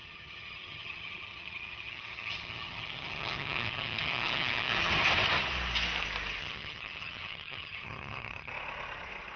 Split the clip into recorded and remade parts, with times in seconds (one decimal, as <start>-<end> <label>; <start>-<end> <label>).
0.0-4.9 remade; 4.9-6.4 recorded; 6.4-8.5 remade; 8.5-9.4 recorded